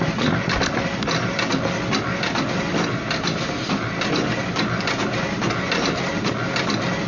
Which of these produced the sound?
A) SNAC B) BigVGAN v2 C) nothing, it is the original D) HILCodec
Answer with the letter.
C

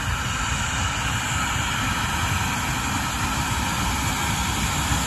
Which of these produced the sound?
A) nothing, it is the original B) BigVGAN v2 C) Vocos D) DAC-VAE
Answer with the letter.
A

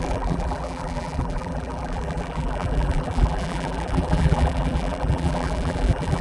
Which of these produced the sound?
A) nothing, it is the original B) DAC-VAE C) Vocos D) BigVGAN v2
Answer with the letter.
D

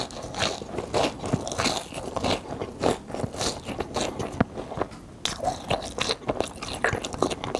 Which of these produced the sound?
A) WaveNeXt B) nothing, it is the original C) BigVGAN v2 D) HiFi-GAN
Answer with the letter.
B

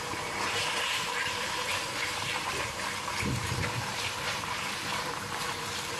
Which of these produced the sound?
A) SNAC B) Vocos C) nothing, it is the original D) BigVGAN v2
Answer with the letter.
D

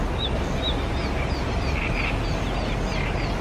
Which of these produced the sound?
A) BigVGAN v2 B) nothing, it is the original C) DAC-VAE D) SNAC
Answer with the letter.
A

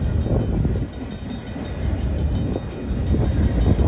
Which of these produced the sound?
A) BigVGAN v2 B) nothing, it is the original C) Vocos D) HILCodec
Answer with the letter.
B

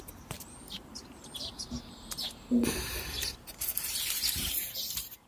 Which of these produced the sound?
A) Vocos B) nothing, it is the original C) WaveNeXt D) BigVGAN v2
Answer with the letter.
D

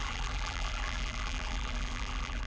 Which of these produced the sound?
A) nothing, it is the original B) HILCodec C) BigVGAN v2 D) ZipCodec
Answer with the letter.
C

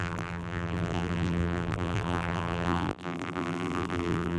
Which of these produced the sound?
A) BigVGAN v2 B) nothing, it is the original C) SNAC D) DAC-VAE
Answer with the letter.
A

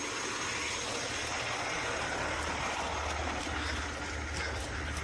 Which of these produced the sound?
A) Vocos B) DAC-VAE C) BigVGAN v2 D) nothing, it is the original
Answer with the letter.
D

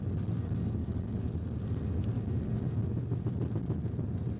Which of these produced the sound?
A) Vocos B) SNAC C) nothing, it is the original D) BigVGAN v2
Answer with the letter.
C